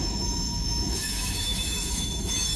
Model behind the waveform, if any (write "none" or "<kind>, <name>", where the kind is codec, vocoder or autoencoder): autoencoder, DAC-VAE